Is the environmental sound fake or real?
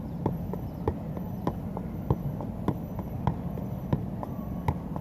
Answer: real